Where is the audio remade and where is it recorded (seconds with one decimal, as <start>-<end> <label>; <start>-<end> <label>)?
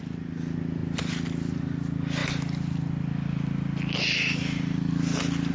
0.0-5.5 recorded